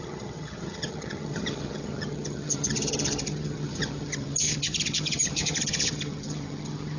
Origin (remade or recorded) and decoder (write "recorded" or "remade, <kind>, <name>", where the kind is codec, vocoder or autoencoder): remade, vocoder, HiFi-GAN